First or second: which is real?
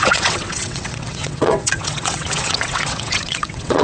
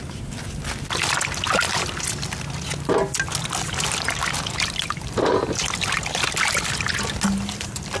second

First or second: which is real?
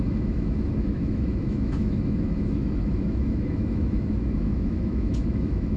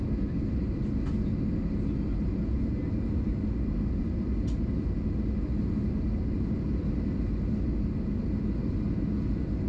second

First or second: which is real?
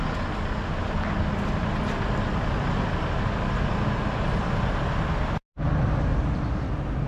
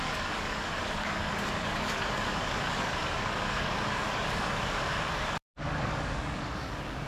first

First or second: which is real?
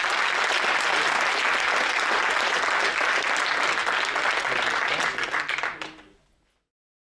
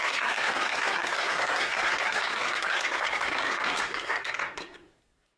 first